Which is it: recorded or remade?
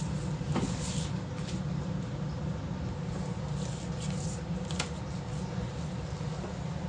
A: recorded